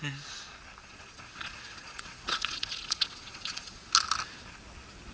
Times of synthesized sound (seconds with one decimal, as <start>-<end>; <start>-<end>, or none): 0.8-3.9